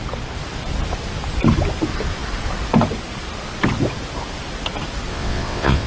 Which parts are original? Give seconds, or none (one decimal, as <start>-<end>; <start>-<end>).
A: 0.0-5.1